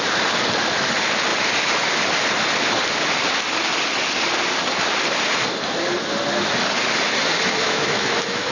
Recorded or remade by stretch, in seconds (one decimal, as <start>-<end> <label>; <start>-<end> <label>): 0.0-7.5 recorded; 7.5-8.5 remade